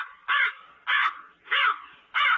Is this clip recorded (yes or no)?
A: yes